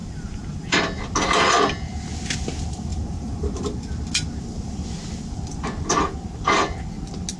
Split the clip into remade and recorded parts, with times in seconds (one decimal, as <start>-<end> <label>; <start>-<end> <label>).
0.0-0.8 remade; 0.8-2.9 recorded; 2.9-3.9 remade; 3.9-7.4 recorded